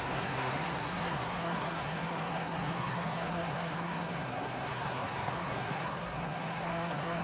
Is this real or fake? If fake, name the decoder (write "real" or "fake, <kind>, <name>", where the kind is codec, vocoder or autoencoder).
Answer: fake, codec, SNAC